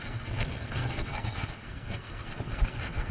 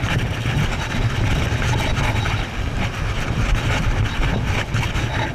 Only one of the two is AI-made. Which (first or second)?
first